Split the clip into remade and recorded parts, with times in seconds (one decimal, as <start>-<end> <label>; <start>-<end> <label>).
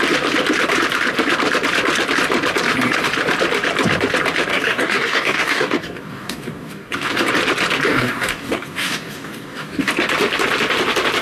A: 0.0-4.5 recorded; 4.5-7.3 remade; 7.3-7.9 recorded; 7.9-9.9 remade; 9.9-11.2 recorded